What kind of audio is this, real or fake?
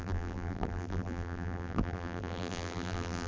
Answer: fake